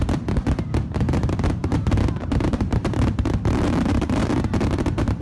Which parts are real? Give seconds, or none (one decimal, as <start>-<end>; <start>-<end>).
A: 0.0-1.0

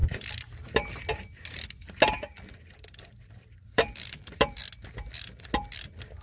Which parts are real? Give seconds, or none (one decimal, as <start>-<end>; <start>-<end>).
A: 0.0-2.3; 4.6-6.2